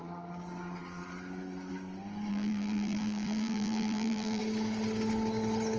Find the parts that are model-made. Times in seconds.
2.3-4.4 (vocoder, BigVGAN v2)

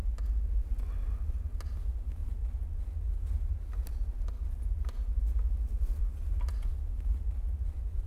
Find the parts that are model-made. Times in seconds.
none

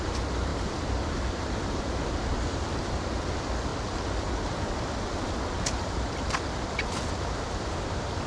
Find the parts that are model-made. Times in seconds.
0.5-1.9 (vocoder, BigVGAN v2)